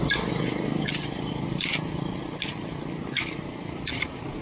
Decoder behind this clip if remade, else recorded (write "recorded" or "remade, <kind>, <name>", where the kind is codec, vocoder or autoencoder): recorded